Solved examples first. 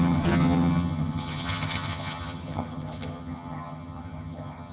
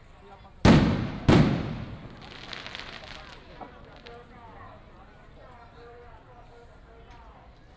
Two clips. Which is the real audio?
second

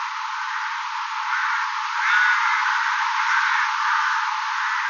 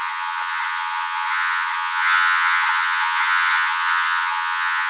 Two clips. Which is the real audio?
first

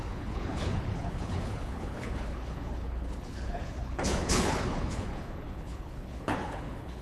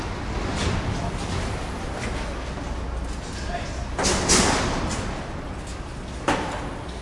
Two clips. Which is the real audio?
second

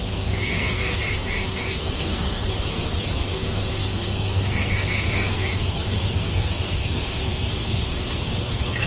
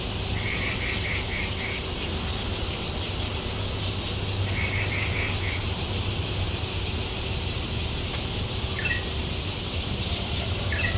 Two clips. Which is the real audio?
second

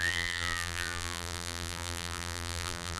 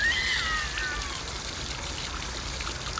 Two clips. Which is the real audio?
second